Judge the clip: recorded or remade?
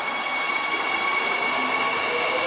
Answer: recorded